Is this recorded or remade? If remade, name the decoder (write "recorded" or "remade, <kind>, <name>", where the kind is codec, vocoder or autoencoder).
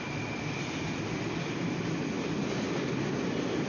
recorded